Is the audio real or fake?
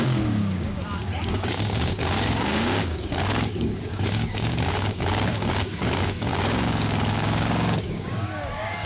fake